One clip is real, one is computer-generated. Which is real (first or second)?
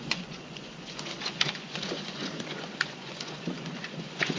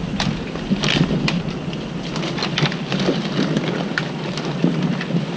second